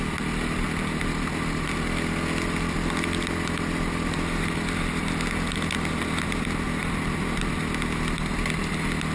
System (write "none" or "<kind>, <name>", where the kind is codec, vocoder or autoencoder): none